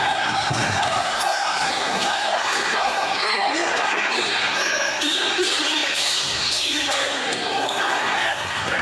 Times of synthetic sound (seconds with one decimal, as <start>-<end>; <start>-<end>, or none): 0.0-8.8